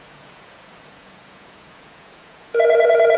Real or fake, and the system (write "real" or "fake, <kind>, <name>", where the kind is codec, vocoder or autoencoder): fake, vocoder, Vocos